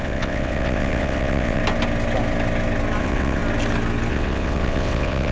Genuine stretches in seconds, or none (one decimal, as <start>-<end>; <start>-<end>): 1.6-3.0; 3.4-4.1